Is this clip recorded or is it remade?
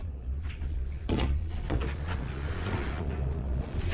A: remade